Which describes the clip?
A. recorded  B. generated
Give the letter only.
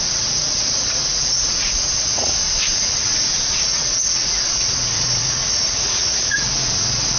B